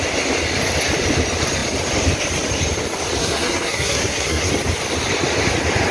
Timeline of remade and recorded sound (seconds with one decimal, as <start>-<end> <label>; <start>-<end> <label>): 0.0-3.2 recorded; 3.2-4.5 remade; 4.5-5.9 recorded